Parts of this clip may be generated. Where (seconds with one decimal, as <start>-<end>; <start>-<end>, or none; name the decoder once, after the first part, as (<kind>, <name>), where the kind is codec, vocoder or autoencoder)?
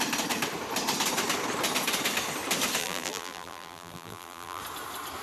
2.8-4.6 (vocoder, BigVGAN v2)